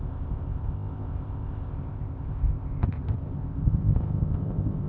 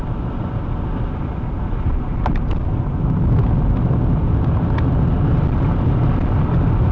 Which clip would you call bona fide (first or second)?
second